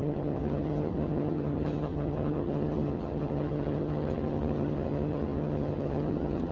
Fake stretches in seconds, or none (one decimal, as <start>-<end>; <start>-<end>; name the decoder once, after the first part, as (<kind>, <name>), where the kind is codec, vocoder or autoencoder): 0.0-6.5 (vocoder, HiFi-GAN)